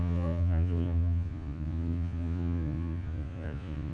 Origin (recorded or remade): remade